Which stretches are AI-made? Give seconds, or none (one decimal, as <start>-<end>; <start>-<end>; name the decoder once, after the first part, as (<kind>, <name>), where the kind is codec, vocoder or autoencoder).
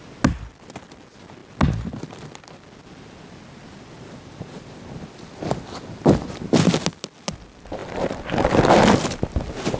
none